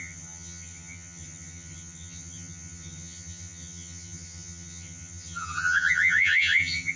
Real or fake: fake